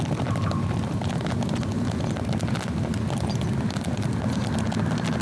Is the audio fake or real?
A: real